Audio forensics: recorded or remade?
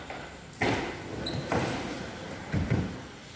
recorded